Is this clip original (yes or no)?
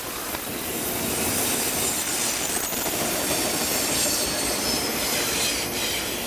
yes